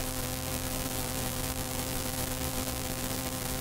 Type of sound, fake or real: fake